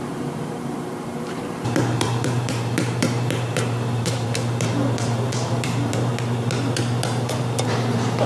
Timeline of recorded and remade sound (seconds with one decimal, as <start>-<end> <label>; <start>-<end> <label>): 0.0-6.1 remade; 6.1-7.1 recorded; 7.1-8.3 remade